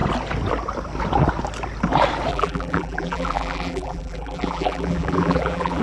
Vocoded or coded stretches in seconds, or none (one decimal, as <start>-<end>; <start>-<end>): 2.3-5.8